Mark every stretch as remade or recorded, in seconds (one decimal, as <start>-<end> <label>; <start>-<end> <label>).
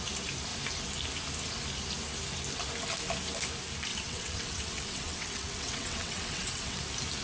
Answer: 0.0-3.9 recorded; 3.9-6.8 remade; 6.8-7.2 recorded